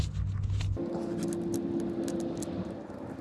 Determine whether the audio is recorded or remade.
recorded